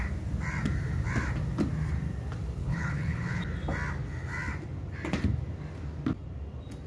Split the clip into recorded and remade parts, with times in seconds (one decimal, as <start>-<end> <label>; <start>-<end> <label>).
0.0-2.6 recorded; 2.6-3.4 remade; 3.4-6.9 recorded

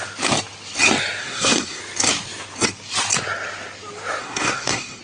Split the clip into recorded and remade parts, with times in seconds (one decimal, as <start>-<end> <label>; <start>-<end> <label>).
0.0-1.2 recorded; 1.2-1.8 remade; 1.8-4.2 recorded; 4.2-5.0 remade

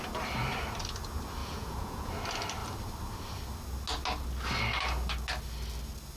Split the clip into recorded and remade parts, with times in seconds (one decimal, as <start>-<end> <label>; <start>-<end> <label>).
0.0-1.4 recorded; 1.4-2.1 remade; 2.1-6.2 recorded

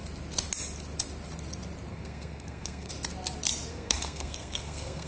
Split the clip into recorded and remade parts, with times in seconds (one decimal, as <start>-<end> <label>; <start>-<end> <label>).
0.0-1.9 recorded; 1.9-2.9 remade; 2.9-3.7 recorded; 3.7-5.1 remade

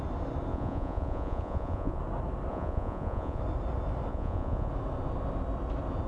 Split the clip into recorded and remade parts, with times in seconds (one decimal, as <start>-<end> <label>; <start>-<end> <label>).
0.0-0.5 recorded; 0.5-2.0 remade; 2.0-2.5 recorded; 2.5-3.4 remade; 3.4-4.1 recorded; 4.1-4.7 remade; 4.7-6.1 recorded

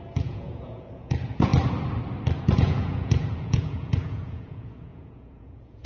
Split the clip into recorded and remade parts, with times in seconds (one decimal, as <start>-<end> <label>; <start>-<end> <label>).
0.0-1.5 remade; 1.5-2.4 recorded; 2.4-5.9 remade

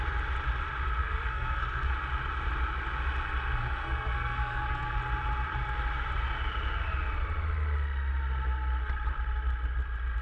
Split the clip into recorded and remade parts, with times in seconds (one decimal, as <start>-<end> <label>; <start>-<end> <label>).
0.0-1.0 recorded; 1.0-1.9 remade; 1.9-3.6 recorded; 3.6-5.0 remade; 5.0-10.2 recorded